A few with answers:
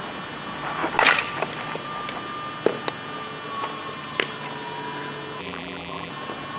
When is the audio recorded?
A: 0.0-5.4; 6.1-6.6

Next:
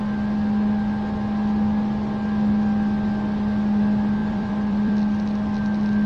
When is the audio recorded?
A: 0.0-4.2; 4.9-6.1